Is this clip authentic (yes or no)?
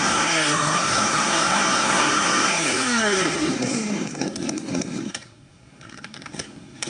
no